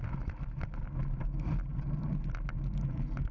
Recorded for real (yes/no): yes